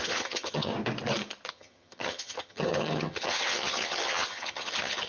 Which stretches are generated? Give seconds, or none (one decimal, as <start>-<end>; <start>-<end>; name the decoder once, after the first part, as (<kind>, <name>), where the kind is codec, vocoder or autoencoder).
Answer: 0.0-0.7 (vocoder, HiFi-GAN); 1.5-5.1